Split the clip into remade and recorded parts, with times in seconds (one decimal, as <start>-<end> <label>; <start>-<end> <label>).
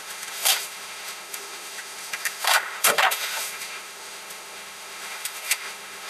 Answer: 0.0-6.1 remade